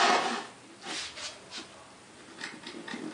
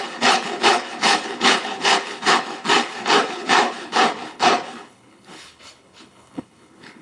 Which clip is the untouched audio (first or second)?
first